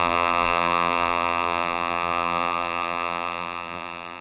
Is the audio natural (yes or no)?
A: no